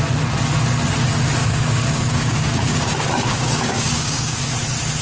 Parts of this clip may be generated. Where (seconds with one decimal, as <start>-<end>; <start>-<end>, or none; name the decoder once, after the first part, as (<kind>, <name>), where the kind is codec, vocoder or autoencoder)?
1.4-4.4 (codec, DAC)